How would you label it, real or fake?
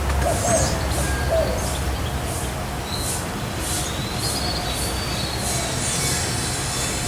real